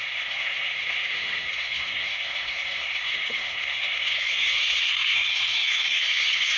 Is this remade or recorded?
remade